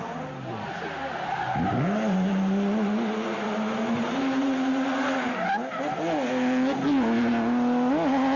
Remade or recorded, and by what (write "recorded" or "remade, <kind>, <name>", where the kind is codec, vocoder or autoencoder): recorded